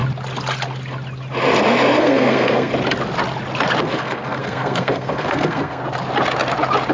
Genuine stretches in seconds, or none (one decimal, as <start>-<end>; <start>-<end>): 0.0-2.0; 2.7-3.8; 5.8-6.9